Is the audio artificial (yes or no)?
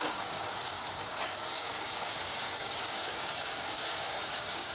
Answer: yes